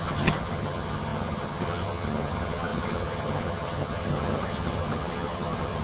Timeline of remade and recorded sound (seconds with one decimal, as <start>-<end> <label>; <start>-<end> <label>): 0.0-5.8 remade